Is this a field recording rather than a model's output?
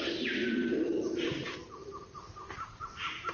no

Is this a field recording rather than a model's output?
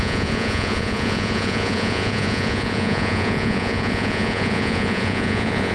no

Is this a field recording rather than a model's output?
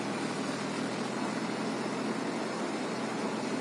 yes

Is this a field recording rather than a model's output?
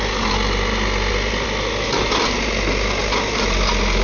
yes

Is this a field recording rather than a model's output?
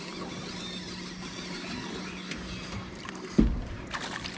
yes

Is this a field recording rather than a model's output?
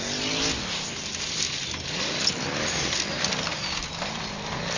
yes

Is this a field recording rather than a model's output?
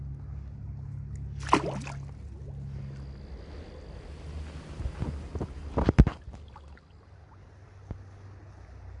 yes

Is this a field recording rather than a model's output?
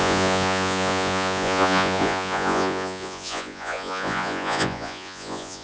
no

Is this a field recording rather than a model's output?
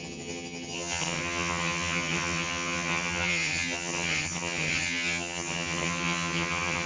no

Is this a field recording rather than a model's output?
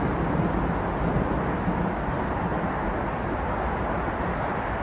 yes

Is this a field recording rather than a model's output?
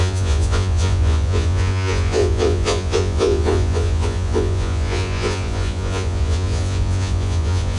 no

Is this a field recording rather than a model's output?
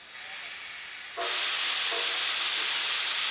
yes